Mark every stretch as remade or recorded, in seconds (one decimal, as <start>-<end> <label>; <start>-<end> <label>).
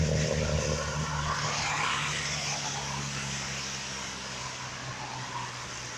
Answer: 0.0-1.1 recorded; 1.1-4.7 remade; 4.7-6.0 recorded